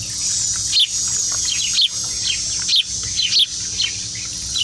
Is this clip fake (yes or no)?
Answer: no